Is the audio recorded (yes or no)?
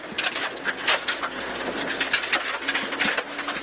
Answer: yes